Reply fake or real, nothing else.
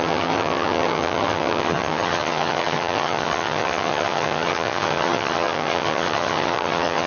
fake